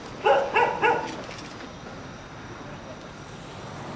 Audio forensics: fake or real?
real